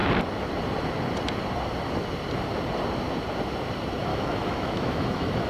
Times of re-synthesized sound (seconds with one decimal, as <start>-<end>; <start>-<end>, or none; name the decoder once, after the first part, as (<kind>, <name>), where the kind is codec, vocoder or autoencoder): 4.1-5.5 (autoencoder, DAC-VAE)